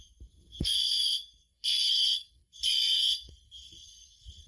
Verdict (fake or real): fake